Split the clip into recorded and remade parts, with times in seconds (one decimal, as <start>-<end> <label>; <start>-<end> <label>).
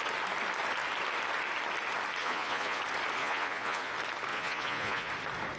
0.0-2.2 recorded; 2.2-2.8 remade; 2.8-3.2 recorded; 3.2-3.9 remade; 3.9-4.3 recorded; 4.3-5.1 remade; 5.1-5.6 recorded